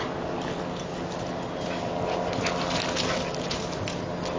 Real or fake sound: real